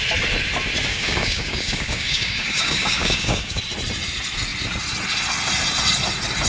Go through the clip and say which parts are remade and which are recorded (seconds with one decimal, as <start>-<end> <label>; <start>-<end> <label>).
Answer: 0.0-0.9 recorded; 0.9-3.6 remade; 3.6-6.5 recorded